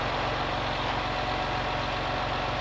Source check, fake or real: real